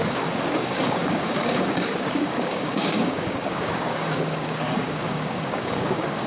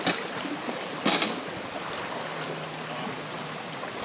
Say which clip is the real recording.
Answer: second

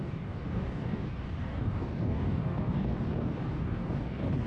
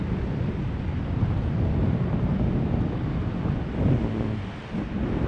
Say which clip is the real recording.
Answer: second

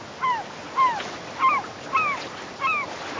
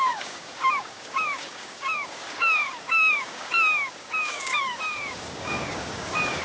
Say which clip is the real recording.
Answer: first